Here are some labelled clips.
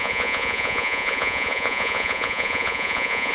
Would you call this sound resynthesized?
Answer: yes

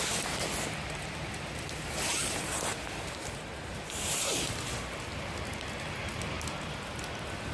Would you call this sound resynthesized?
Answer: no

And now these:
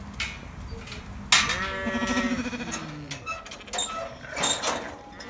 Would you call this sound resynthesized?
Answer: no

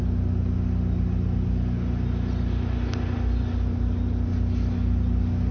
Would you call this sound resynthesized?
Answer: no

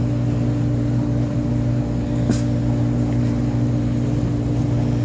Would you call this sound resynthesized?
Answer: no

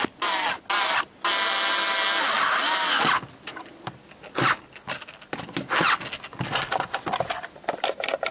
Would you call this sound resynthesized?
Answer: no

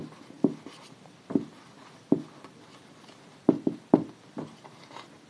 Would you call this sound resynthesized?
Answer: no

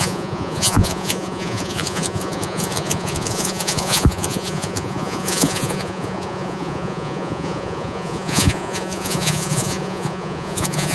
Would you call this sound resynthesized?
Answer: yes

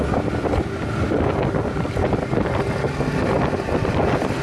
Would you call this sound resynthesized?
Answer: no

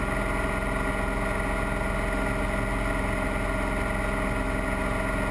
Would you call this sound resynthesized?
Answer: no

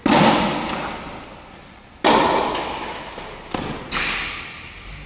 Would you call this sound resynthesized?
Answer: no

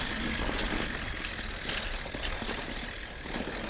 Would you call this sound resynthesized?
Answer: no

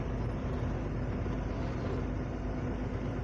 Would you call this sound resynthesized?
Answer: no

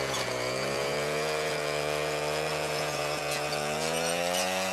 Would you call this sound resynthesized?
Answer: yes